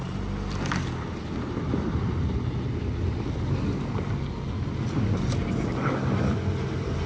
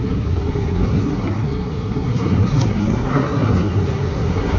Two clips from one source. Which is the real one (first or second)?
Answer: first